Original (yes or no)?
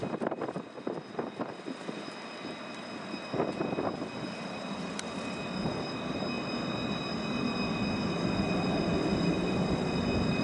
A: yes